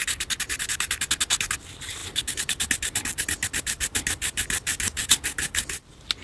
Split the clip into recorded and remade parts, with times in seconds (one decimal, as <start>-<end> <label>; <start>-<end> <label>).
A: 0.0-6.2 recorded